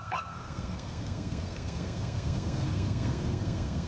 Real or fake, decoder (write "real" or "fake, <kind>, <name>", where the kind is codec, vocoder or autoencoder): fake, codec, SNAC